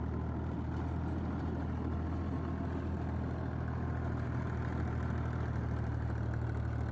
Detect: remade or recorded recorded